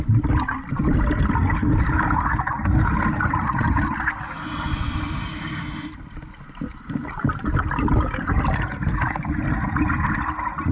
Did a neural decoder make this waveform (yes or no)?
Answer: no